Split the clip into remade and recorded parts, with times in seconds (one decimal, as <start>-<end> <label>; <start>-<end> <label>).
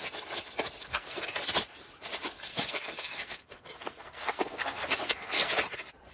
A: 0.0-0.9 recorded; 0.9-1.4 remade; 1.4-2.5 recorded; 2.5-5.5 remade; 5.5-6.1 recorded